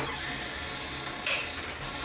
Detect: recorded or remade recorded